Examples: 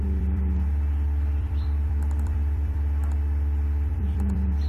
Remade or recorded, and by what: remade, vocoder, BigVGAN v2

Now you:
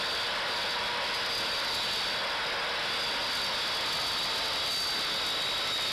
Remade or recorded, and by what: recorded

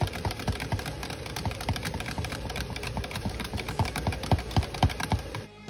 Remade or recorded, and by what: remade, vocoder, BigVGAN v2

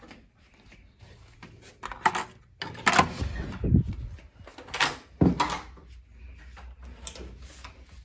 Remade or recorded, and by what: recorded